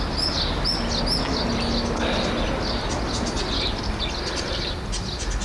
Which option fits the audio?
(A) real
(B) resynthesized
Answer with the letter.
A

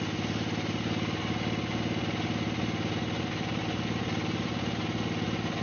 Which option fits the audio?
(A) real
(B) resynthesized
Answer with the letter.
A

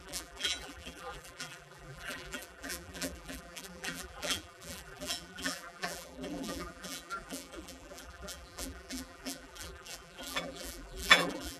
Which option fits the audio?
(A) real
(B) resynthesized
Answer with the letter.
B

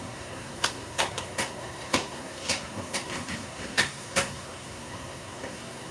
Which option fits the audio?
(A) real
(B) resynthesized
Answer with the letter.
B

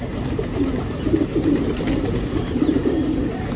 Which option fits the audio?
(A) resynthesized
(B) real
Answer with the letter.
B